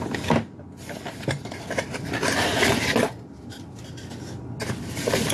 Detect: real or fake real